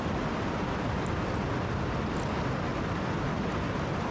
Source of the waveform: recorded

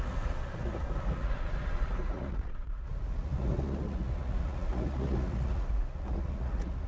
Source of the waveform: remade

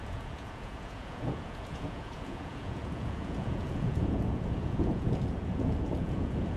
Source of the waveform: remade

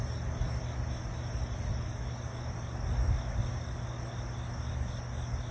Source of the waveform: recorded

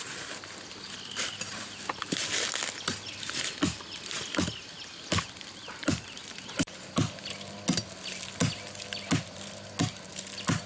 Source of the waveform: recorded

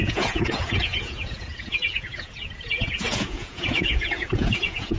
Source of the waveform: remade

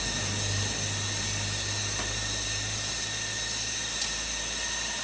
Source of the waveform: recorded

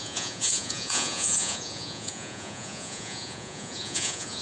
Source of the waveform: remade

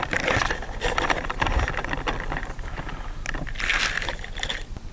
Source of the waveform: recorded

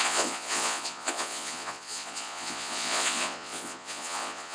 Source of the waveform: remade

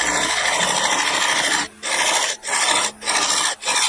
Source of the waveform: recorded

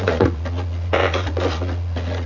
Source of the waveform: remade